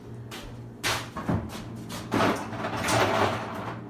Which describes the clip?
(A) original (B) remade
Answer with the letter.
A